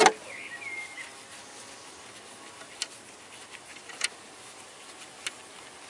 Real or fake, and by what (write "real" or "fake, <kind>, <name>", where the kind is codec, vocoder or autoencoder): real